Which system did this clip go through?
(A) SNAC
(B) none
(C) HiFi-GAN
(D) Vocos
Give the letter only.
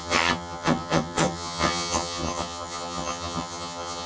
C